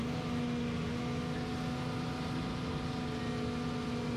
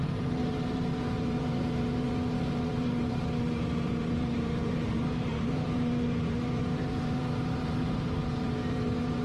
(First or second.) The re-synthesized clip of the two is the second